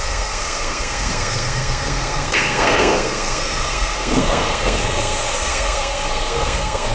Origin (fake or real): fake